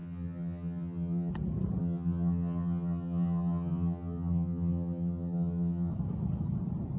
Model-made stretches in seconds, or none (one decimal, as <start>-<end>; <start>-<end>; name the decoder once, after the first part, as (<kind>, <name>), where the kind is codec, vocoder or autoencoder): 0.0-1.3 (vocoder, HiFi-GAN); 1.8-5.9